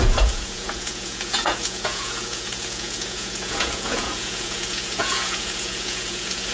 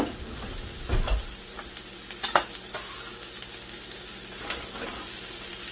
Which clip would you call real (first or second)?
second